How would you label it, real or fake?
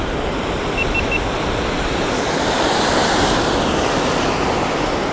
real